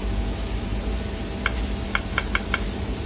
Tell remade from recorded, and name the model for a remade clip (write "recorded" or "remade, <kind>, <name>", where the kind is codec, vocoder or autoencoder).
recorded